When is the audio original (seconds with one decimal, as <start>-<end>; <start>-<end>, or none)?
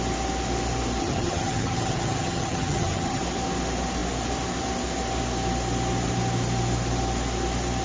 0.0-1.0; 3.2-7.8